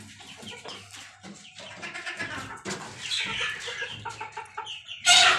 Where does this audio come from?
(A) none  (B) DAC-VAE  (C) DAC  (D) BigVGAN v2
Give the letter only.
A